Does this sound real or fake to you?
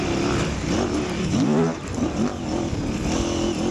real